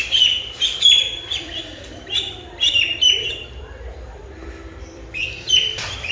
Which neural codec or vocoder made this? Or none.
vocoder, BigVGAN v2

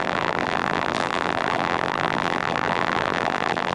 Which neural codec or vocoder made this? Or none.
vocoder, BigVGAN v2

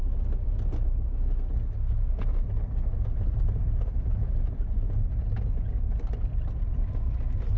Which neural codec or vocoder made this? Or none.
none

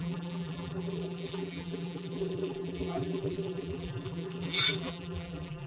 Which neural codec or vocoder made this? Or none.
vocoder, BigVGAN v2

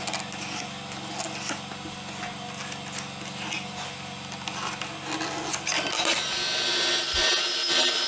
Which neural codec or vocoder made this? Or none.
none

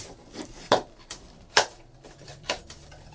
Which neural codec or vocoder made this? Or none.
vocoder, BigVGAN v2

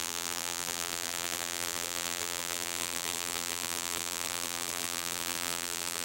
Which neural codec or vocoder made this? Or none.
vocoder, BigVGAN v2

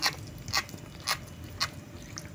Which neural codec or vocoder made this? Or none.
none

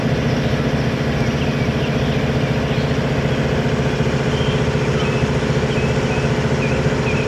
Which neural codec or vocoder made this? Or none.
none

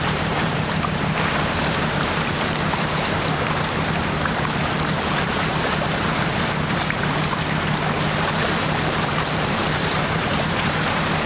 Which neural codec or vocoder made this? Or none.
vocoder, BigVGAN v2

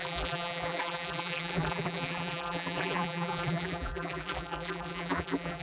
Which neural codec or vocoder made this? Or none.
vocoder, BigVGAN v2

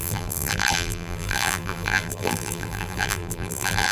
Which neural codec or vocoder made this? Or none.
vocoder, BigVGAN v2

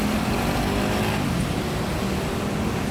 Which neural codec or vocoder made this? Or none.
none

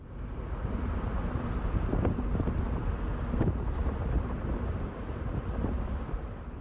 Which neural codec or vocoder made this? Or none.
none